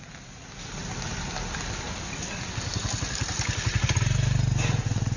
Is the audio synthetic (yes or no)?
no